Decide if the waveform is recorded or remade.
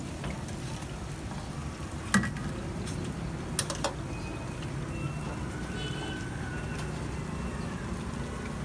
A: recorded